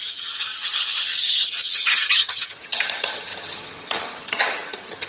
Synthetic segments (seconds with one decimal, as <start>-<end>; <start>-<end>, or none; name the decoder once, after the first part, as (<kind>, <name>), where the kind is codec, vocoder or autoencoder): 0.0-5.1 (vocoder, HiFi-GAN)